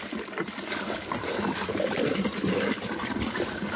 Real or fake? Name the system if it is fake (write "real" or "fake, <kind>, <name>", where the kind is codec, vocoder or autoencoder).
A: real